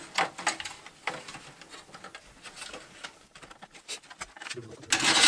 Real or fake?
real